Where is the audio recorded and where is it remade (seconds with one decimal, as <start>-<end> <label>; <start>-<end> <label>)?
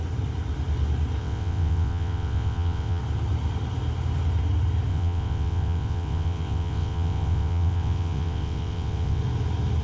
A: 0.0-1.2 recorded; 1.2-3.0 remade; 3.0-4.9 recorded; 4.9-9.2 remade; 9.2-9.8 recorded